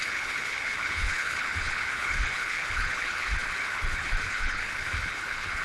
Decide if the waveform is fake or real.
fake